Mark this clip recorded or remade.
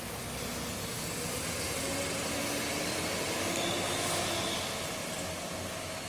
recorded